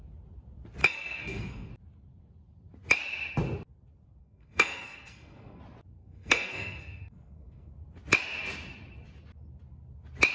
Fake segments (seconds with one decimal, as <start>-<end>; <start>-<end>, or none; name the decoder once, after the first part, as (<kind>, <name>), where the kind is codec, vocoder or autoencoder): 0.8-1.7 (codec, SNAC); 4.2-5.6; 6.0-7.7